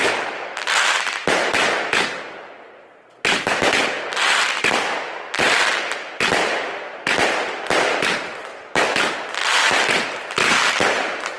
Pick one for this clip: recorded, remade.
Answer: recorded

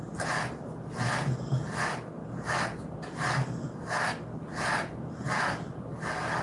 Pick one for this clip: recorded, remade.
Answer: recorded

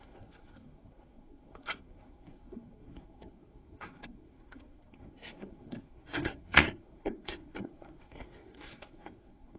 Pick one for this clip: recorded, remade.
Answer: remade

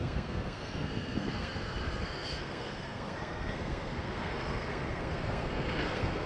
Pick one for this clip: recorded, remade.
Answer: remade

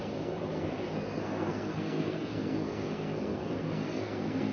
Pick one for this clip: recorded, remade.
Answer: remade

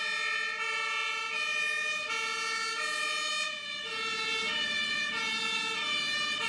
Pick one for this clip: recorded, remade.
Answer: recorded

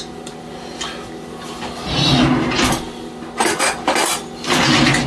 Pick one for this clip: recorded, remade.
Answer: recorded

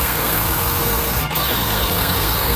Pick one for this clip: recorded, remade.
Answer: remade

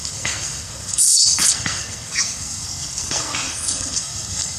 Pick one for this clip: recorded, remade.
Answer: remade